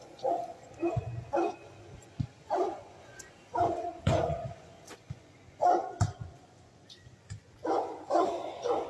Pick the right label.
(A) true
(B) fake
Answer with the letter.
B